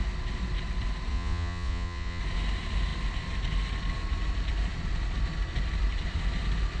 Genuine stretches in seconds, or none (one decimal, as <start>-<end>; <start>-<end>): 0.0-1.1; 2.2-6.8